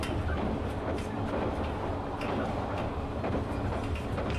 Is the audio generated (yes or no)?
no